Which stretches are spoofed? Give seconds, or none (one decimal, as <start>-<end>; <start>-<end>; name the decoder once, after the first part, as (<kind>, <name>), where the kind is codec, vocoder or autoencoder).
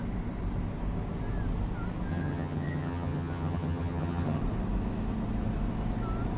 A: 2.1-4.4 (vocoder, HiFi-GAN)